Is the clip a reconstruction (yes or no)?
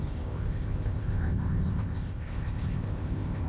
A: yes